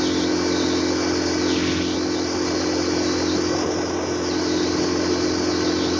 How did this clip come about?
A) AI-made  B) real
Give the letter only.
B